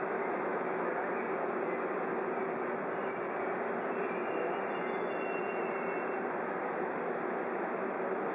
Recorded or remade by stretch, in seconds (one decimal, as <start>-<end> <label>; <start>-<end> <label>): 0.0-8.3 recorded